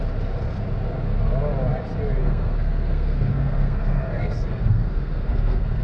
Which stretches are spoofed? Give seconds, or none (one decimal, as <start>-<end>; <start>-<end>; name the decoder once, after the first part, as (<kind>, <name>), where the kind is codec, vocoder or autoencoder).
2.2-5.8 (codec, SNAC)